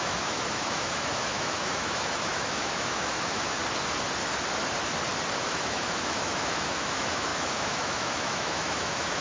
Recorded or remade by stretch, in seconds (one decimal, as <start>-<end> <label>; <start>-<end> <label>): 0.0-3.6 remade; 3.6-5.4 recorded; 5.4-9.2 remade